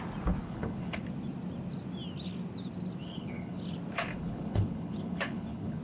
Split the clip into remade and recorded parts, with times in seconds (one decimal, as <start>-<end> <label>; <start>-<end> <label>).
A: 0.0-0.4 recorded; 0.4-1.0 remade; 1.0-3.0 recorded; 3.0-3.6 remade; 3.6-4.1 recorded; 4.1-5.8 remade